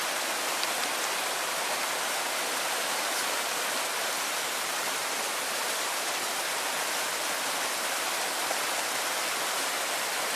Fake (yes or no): yes